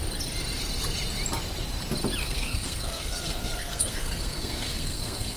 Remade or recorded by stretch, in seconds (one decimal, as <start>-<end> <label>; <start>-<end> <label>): 0.0-2.2 recorded; 2.2-5.4 remade